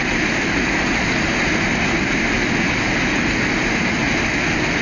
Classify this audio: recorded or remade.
recorded